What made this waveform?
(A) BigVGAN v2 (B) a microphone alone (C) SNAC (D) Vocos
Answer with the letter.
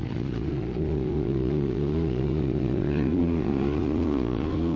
D